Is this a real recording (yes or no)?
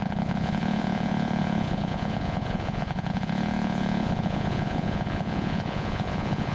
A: no